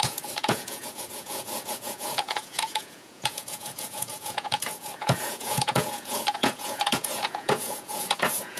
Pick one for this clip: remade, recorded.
remade